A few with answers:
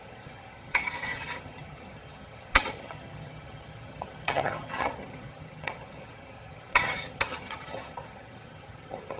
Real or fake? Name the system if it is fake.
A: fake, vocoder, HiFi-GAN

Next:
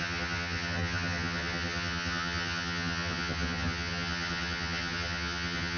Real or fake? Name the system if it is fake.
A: fake, vocoder, HiFi-GAN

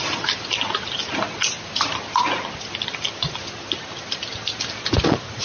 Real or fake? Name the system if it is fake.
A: real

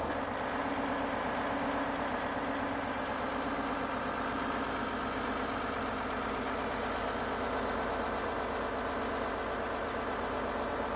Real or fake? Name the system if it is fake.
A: real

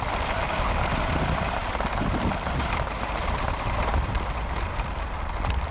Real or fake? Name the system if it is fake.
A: real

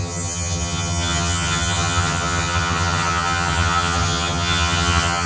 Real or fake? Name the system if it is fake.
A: fake, vocoder, HiFi-GAN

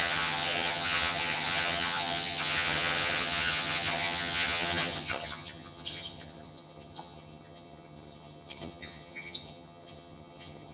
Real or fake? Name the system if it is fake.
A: fake, vocoder, HiFi-GAN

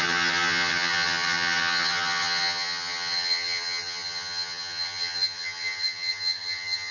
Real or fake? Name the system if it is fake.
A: fake, vocoder, HiFi-GAN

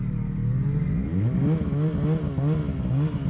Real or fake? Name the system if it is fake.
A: real